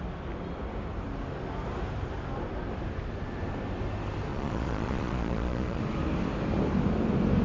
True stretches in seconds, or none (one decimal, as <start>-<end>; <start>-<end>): 0.0-4.3; 5.8-7.4